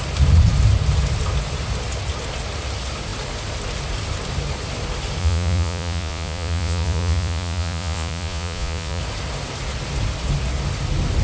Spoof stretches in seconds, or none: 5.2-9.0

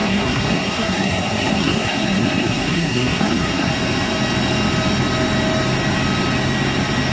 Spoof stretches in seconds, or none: 0.0-3.7

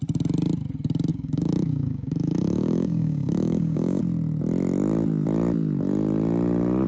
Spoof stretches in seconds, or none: 1.1-4.0

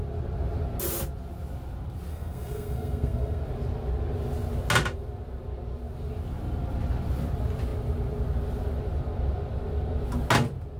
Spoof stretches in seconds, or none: 2.1-3.4

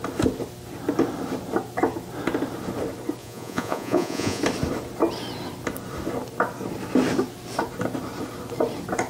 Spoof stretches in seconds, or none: 3.2-4.4

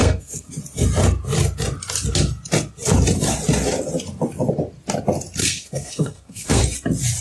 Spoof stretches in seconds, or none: 0.0-0.5; 5.4-6.6

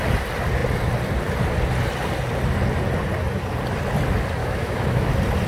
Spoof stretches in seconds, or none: 4.4-5.1